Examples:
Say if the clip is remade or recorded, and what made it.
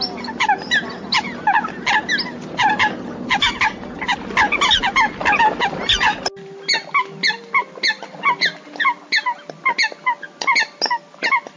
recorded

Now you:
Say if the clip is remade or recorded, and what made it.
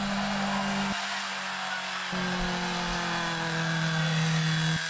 recorded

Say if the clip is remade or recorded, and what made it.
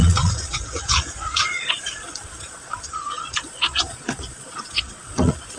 remade, vocoder, Vocos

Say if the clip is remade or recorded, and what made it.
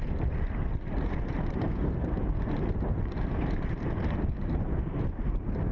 remade, vocoder, BigVGAN v2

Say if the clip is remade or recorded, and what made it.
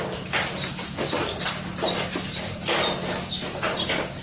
recorded